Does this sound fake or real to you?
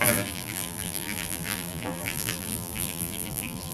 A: fake